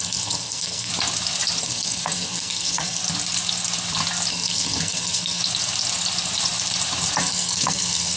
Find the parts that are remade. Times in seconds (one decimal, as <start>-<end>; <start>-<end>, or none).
0.0-0.9; 1.6-3.0; 4.3-5.4; 7.2-8.2